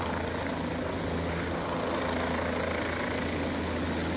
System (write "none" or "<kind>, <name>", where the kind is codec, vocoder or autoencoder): none